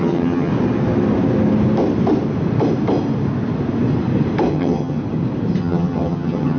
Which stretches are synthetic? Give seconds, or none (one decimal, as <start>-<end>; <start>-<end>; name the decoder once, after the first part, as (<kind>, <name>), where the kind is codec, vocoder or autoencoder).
0.0-0.5 (vocoder, HiFi-GAN); 4.5-5.0; 5.6-6.6